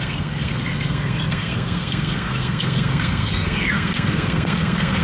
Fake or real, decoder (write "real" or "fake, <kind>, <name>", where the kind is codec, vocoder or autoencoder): fake, codec, SNAC